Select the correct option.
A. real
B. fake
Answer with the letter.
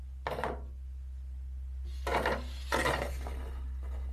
A